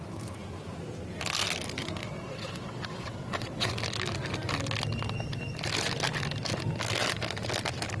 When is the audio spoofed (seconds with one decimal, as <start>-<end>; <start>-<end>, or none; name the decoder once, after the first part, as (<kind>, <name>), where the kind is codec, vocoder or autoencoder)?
2.0-3.7 (vocoder, WaveNeXt)